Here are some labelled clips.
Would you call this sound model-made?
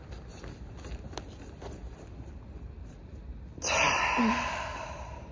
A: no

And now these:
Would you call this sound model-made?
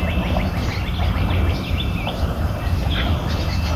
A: no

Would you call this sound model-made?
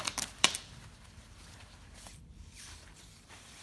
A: yes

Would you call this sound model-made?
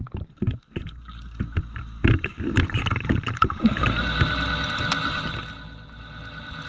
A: no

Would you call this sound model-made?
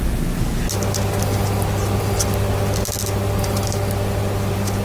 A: no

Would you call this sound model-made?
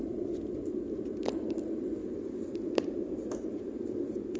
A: yes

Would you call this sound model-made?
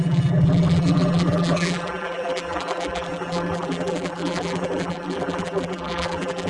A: yes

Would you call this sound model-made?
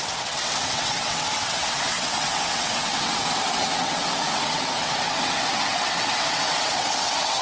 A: yes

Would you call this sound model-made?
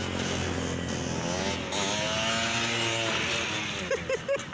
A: no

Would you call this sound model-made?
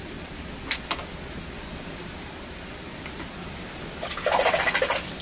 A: no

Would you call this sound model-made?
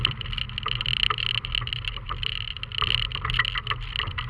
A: no